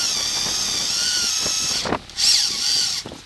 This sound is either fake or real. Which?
real